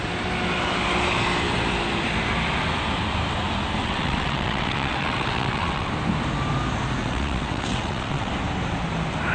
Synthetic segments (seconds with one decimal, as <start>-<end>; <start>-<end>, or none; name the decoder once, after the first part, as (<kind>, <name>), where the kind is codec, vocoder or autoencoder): 3.8-5.9 (vocoder, WaveNeXt); 7.0-8.3